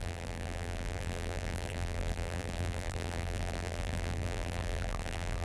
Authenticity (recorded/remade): remade